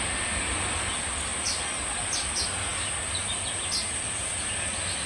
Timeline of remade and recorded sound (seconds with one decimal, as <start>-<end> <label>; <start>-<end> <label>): 0.0-5.1 recorded